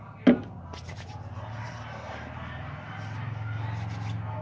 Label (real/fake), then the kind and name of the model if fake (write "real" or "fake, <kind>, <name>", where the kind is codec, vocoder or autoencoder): real